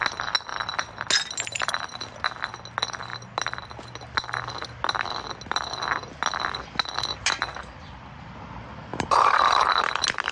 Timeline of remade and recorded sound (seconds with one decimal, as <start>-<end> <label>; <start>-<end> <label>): 0.0-8.9 recorded; 8.9-9.8 remade; 9.8-10.3 recorded

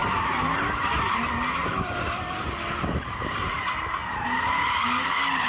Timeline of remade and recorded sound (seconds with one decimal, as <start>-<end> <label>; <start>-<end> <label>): 0.0-1.6 recorded; 1.6-3.4 remade; 3.4-5.5 recorded

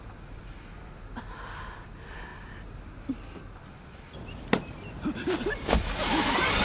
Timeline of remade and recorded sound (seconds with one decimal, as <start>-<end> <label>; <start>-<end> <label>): 0.0-2.3 remade; 2.3-3.5 recorded; 3.5-6.6 remade